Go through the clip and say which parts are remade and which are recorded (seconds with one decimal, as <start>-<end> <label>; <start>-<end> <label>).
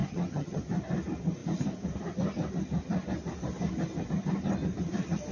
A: 0.0-0.6 remade; 0.6-5.3 recorded